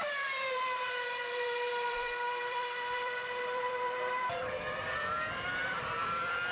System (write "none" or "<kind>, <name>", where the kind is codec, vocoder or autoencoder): vocoder, BigVGAN v2